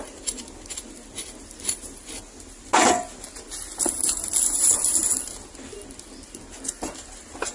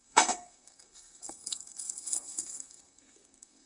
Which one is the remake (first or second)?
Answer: second